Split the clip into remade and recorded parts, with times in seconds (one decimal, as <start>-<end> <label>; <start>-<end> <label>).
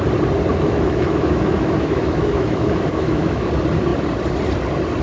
0.0-0.5 recorded; 0.5-3.5 remade; 3.5-5.0 recorded